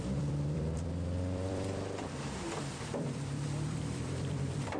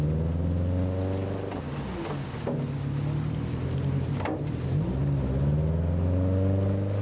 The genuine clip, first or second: second